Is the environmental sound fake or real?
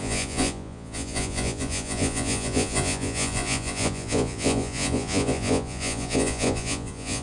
fake